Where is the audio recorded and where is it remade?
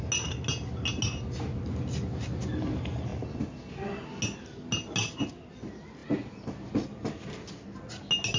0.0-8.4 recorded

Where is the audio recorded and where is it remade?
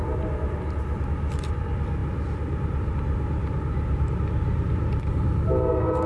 0.0-6.1 recorded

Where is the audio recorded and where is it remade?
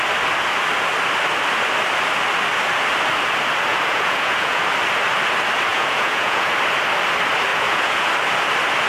0.0-3.7 recorded; 3.7-4.6 remade; 4.6-5.7 recorded; 5.7-6.5 remade; 6.5-7.5 recorded; 7.5-8.1 remade; 8.1-8.9 recorded